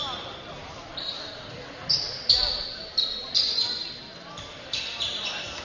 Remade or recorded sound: remade